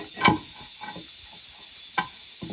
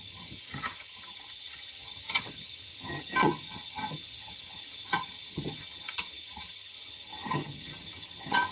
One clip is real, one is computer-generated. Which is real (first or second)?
first